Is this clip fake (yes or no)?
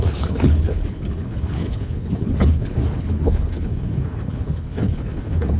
yes